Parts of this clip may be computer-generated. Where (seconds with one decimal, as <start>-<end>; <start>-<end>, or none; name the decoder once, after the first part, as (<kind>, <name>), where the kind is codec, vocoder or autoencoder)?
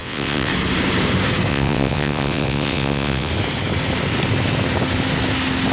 0.0-0.5 (vocoder, WaveNeXt); 1.5-3.3